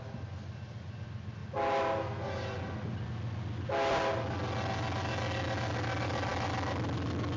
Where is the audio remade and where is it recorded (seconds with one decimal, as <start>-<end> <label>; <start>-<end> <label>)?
0.0-7.4 recorded